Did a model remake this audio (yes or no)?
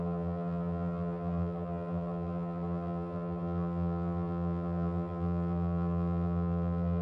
yes